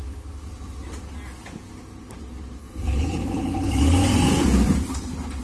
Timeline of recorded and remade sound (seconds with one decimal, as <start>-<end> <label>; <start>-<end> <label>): 0.0-2.6 recorded; 2.6-3.7 remade; 3.7-5.4 recorded